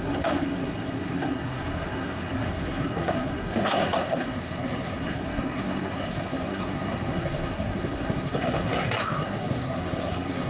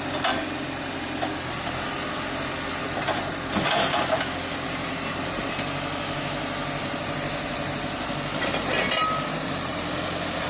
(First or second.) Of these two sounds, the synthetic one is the first